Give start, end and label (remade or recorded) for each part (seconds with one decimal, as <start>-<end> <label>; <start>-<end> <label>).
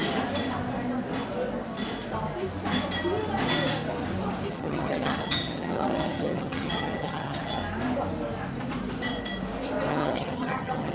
0.0-4.5 recorded; 4.5-7.6 remade; 7.6-9.9 recorded; 9.9-10.9 remade